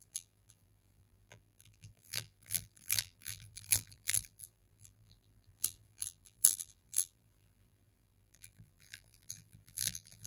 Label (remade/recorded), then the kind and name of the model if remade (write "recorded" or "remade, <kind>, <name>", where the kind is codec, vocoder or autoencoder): remade, vocoder, BigVGAN v2